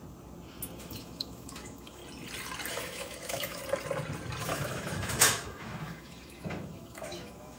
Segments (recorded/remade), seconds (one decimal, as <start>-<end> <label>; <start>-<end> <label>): 0.0-0.8 recorded; 0.8-2.0 remade; 2.0-2.7 recorded; 2.7-3.6 remade; 3.6-4.4 recorded; 4.4-7.6 remade